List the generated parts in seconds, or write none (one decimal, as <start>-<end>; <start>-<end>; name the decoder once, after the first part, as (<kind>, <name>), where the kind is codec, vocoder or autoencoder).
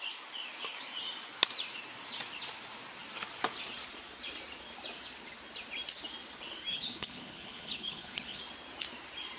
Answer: 6.7-8.4 (codec, HILCodec)